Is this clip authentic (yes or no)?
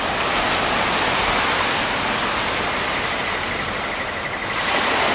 yes